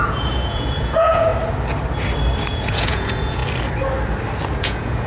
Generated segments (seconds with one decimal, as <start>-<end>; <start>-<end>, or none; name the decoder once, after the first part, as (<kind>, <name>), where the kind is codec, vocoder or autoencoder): 0.0-1.3 (vocoder, Vocos); 2.5-3.4; 4.6-5.1